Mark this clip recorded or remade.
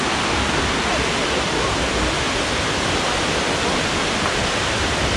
recorded